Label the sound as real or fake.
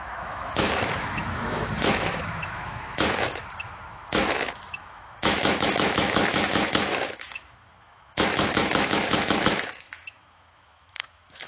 fake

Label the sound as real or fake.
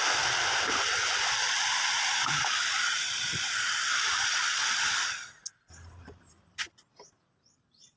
real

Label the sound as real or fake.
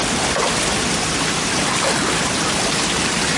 real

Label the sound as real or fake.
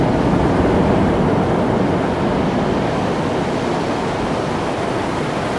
real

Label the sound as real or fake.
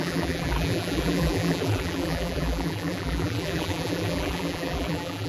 fake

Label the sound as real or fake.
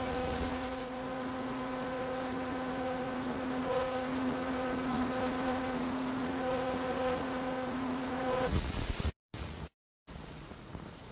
fake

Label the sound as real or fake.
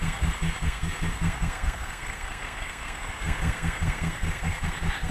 fake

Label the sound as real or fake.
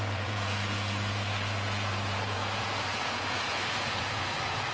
fake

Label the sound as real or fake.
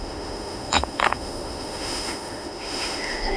fake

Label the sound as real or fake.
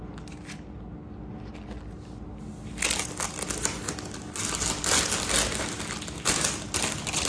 real